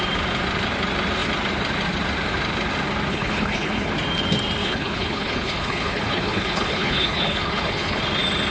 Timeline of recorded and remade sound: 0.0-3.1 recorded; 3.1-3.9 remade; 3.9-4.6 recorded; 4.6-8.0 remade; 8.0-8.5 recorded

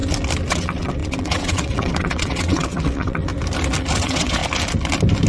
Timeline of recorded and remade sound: 0.0-0.5 recorded; 0.5-3.3 remade; 3.3-4.0 recorded; 4.0-4.4 remade; 4.4-5.3 recorded

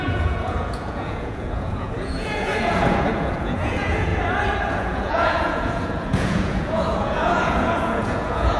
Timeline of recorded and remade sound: 0.0-4.1 remade; 4.1-4.7 recorded; 4.7-8.6 remade

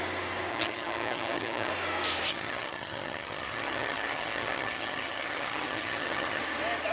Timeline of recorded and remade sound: 0.0-0.5 recorded; 0.5-1.7 remade; 1.7-2.3 recorded; 2.3-6.4 remade; 6.4-6.9 recorded

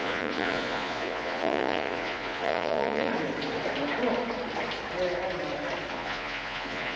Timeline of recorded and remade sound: 0.0-3.1 remade; 3.1-5.9 recorded; 5.9-7.0 remade

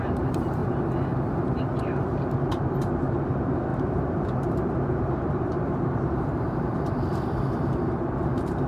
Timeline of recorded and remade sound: 0.0-0.6 remade; 0.6-1.5 recorded; 1.5-8.7 remade

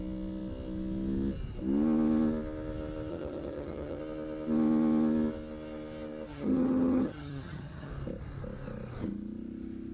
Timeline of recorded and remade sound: 0.0-3.1 recorded; 3.1-4.0 remade; 4.0-6.3 recorded; 6.3-7.9 remade; 7.9-9.9 recorded

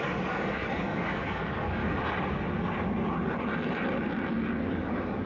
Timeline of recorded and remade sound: 0.0-1.8 remade; 1.8-4.7 recorded; 4.7-5.3 remade